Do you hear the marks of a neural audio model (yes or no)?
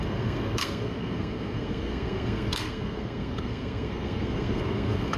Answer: yes